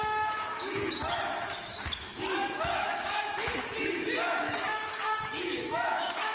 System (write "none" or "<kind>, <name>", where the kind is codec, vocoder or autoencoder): autoencoder, DAC-VAE